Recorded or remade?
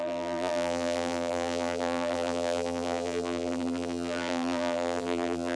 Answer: remade